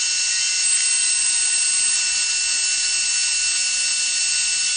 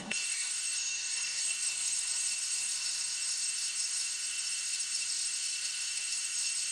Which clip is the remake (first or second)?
second